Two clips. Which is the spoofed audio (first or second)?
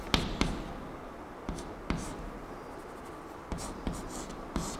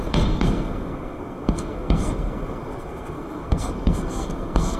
second